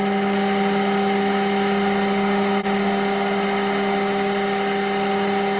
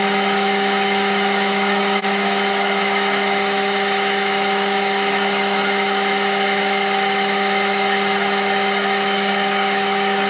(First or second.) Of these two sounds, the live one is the first